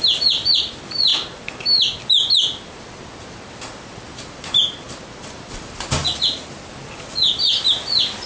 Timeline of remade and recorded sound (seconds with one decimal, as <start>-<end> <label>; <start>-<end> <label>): 0.0-1.1 remade; 1.1-2.0 recorded; 2.0-6.0 remade; 6.0-7.6 recorded; 7.6-8.3 remade